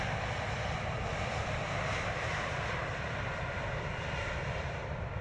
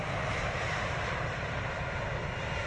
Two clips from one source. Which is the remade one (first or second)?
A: first